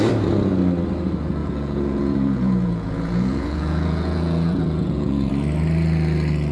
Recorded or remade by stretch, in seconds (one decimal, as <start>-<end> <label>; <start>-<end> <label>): 0.0-1.4 recorded; 1.4-5.3 remade; 5.3-6.5 recorded